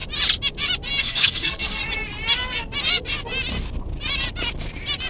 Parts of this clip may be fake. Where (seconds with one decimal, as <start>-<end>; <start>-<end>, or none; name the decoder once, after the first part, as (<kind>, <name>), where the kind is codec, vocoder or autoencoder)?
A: 1.0-1.8 (codec, SNAC)